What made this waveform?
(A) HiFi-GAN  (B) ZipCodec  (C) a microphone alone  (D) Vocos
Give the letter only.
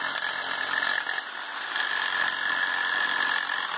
C